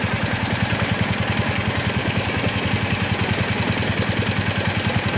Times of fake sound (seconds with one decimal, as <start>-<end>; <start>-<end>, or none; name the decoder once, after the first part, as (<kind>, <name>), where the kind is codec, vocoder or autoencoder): 2.0-2.7 (autoencoder, DAC-VAE)